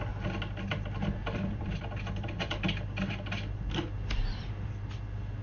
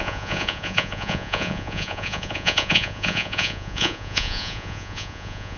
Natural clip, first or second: first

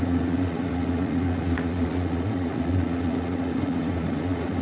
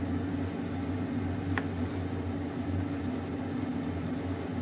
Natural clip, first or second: second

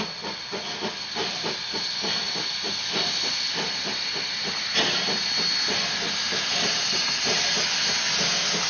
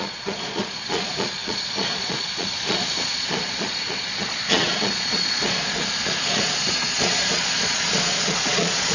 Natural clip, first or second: first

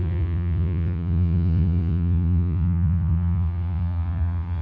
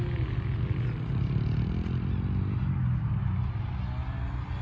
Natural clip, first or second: second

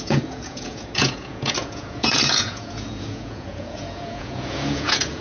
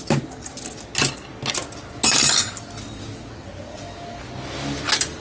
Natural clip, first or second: second